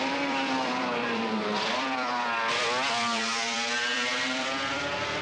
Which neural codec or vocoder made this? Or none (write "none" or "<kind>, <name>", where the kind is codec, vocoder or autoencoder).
vocoder, BigVGAN v2